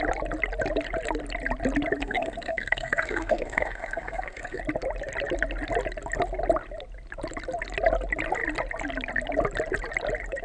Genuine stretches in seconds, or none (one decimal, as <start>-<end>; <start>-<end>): 0.0-2.0; 4.6-10.4